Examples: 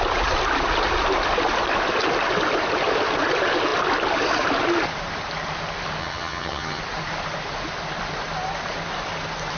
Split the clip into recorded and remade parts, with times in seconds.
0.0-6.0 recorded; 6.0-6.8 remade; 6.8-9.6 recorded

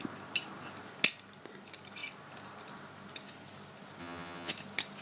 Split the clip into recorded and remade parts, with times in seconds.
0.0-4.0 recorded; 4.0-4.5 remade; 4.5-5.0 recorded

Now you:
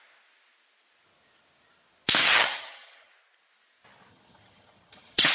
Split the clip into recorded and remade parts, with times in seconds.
0.0-2.2 recorded; 2.2-3.1 remade; 3.1-4.1 recorded; 4.1-5.3 remade

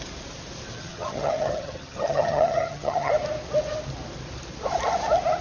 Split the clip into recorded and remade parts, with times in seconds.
0.0-0.8 recorded; 0.8-3.1 remade; 3.1-5.4 recorded

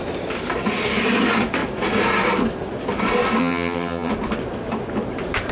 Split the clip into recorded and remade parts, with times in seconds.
0.0-3.4 recorded; 3.4-4.1 remade; 4.1-5.5 recorded

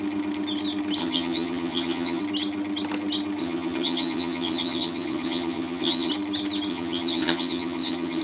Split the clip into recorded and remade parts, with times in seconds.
0.0-1.0 recorded; 1.0-2.2 remade; 2.2-3.4 recorded; 3.4-6.1 remade; 6.1-6.7 recorded; 6.7-8.2 remade

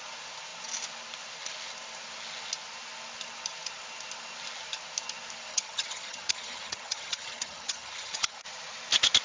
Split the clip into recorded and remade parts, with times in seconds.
0.0-5.5 recorded; 5.5-8.4 remade; 8.4-9.2 recorded

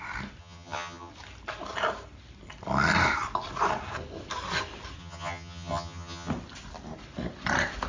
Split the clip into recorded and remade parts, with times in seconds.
0.0-0.4 recorded; 0.4-1.1 remade; 1.1-5.0 recorded; 5.0-6.3 remade; 6.3-7.9 recorded